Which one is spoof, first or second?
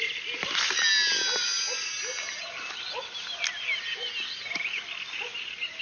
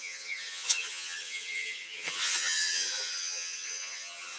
second